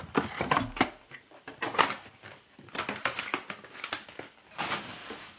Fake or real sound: real